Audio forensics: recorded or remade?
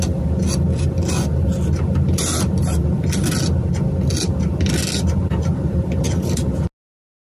recorded